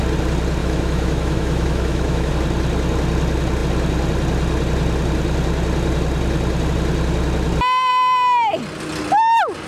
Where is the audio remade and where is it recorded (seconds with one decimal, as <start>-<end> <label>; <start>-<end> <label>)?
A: 0.0-0.6 recorded; 0.6-2.3 remade; 2.3-9.7 recorded